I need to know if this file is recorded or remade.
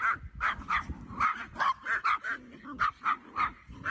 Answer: recorded